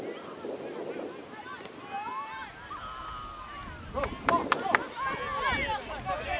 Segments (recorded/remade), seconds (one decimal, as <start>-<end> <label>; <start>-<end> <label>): 0.0-6.4 recorded